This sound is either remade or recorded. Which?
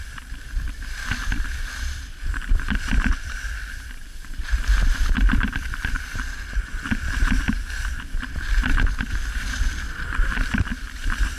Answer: remade